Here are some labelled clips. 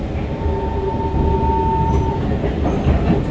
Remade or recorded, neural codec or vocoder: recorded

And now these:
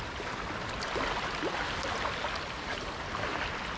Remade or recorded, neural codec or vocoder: recorded